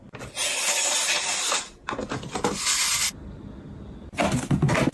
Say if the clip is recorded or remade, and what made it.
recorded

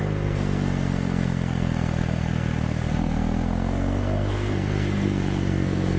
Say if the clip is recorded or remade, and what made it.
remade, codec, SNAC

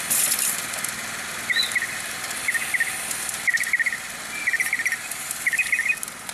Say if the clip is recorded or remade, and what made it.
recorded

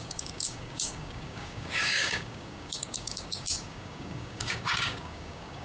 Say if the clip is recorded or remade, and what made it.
remade, codec, DAC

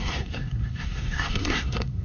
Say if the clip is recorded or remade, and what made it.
remade, codec, SNAC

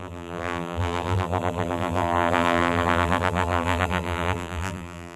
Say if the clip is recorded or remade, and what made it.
remade, vocoder, BigVGAN v2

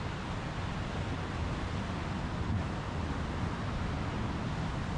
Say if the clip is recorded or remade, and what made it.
recorded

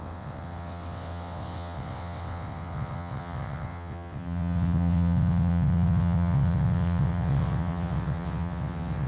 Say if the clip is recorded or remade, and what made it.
remade, vocoder, WaveNeXt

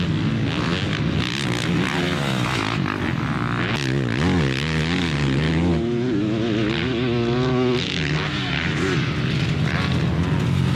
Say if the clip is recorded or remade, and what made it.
recorded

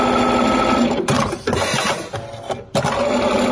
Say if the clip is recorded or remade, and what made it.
recorded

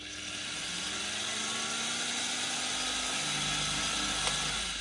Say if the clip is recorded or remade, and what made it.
recorded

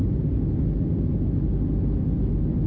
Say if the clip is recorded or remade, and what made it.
recorded